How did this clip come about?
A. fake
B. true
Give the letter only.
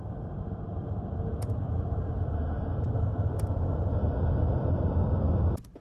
A